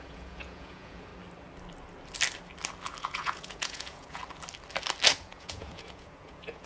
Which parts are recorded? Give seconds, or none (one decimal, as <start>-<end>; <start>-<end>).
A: 1.1-3.0; 4.2-5.2